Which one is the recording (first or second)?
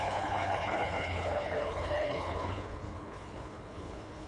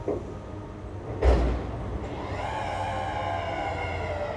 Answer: second